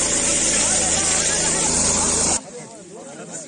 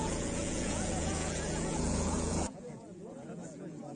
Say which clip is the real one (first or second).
first